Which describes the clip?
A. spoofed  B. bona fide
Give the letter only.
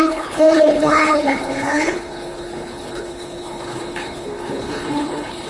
A